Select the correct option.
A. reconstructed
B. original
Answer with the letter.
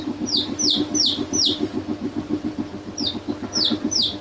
A